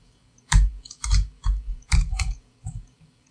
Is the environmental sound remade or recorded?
remade